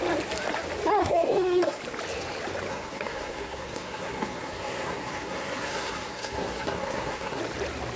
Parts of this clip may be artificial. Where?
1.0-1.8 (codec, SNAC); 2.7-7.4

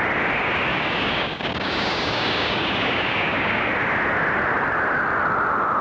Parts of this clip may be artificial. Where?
0.7-3.7 (codec, DAC)